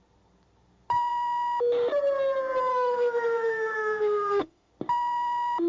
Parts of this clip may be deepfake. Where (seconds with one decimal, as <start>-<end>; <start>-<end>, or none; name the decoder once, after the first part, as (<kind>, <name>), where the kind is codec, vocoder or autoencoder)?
2.7-4.7 (autoencoder, DAC-VAE)